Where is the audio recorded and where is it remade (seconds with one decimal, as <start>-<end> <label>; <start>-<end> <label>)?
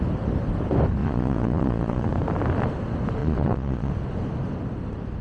0.0-1.0 recorded; 1.0-2.1 remade; 2.1-3.2 recorded; 3.2-3.9 remade; 3.9-5.2 recorded